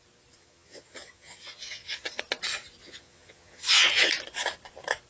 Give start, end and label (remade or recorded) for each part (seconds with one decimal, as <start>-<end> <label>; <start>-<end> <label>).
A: 0.0-0.4 recorded; 0.4-2.2 remade; 2.2-2.8 recorded; 2.8-4.1 remade; 4.1-5.1 recorded